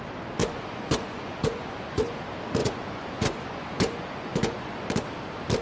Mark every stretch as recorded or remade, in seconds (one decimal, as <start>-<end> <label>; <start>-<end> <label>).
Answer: 0.0-0.4 recorded; 0.4-2.2 remade; 2.2-2.6 recorded; 2.6-4.9 remade; 4.9-5.6 recorded